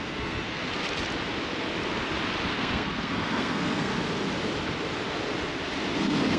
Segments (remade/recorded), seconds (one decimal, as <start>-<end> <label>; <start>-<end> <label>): 0.0-0.7 remade; 0.7-2.5 recorded; 2.5-3.9 remade; 3.9-6.0 recorded; 6.0-6.4 remade